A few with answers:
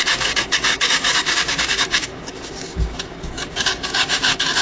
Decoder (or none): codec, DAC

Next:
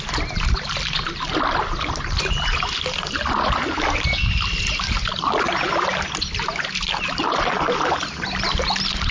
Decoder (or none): none